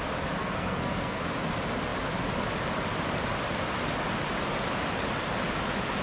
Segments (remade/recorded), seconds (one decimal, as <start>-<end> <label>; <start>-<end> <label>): 0.0-0.4 recorded; 0.4-1.2 remade; 1.2-6.0 recorded